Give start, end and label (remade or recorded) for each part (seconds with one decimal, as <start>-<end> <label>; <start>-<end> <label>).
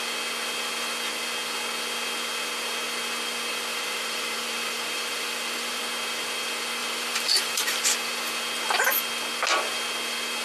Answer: 0.0-3.7 recorded; 3.7-5.8 remade; 5.8-6.8 recorded; 6.8-8.4 remade; 8.4-10.4 recorded